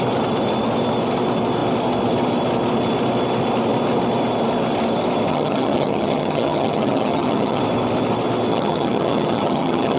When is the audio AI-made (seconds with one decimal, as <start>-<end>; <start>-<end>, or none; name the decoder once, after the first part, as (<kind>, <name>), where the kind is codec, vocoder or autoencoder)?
5.3-7.6 (vocoder, HiFi-GAN); 8.5-10.0